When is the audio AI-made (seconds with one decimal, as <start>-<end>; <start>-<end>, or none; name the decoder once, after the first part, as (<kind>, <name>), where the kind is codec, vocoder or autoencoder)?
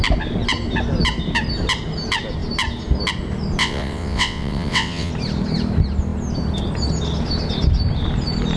3.6-5.1 (vocoder, WaveNeXt)